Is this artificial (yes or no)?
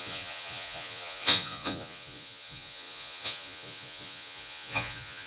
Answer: yes